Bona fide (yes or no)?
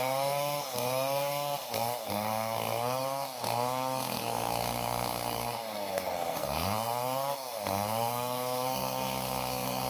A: no